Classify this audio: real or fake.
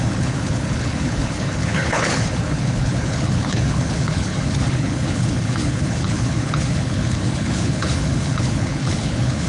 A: fake